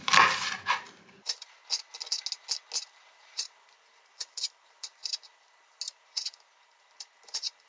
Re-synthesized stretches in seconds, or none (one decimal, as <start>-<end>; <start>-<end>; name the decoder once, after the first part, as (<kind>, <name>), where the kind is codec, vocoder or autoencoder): 0.0-1.6 (vocoder, BigVGAN v2); 3.2-5.0; 5.9-7.7